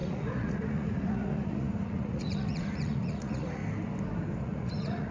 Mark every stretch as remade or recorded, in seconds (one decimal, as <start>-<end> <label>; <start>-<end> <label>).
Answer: 0.0-3.6 remade; 3.6-4.4 recorded; 4.4-5.1 remade